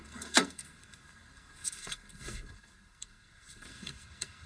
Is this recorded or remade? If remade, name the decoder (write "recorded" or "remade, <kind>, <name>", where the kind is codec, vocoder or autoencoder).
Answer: remade, codec, SNAC